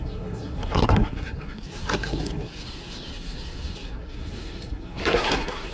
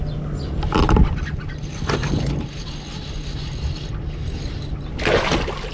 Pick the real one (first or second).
second